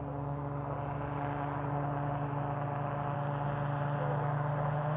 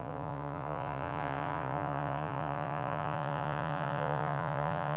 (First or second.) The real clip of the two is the first